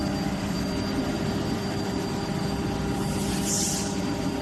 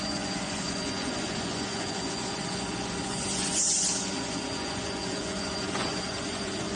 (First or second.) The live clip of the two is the first